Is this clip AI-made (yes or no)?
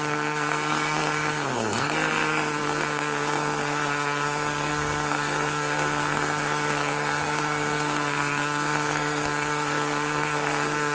yes